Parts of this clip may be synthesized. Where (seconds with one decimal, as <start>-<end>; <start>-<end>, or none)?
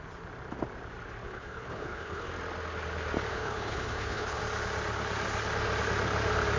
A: 1.2-2.3; 3.3-4.4